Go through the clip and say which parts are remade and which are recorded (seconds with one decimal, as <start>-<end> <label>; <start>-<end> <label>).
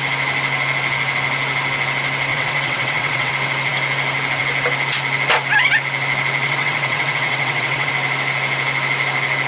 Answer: 0.0-2.3 recorded; 2.3-3.3 remade; 3.3-6.4 recorded; 6.4-7.9 remade; 7.9-9.5 recorded